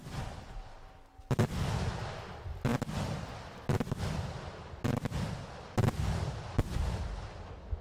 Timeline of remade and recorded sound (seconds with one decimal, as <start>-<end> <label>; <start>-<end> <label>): 0.0-7.8 recorded